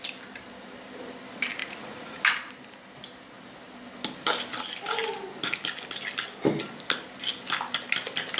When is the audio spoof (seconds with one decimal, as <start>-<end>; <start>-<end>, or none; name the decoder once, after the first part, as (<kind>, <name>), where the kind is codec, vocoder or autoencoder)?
1.6-2.2 (vocoder, Vocos)